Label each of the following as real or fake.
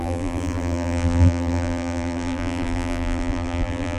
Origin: fake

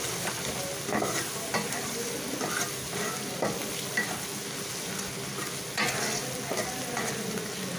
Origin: real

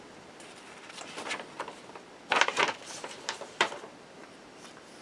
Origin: fake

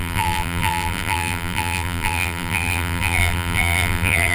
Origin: fake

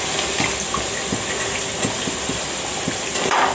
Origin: fake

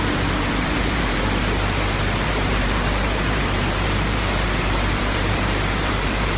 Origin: fake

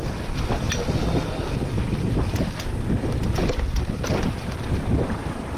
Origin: real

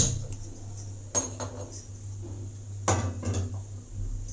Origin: real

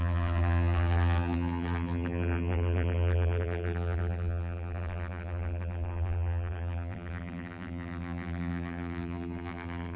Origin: fake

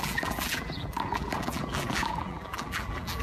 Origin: fake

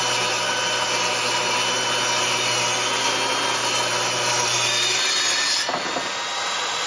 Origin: real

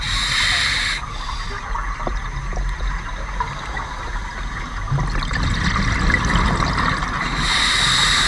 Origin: real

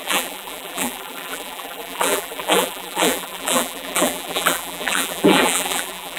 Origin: fake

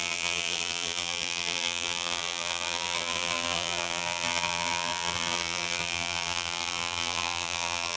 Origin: fake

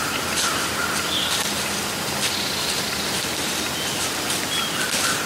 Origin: real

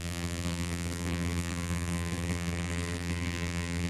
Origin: fake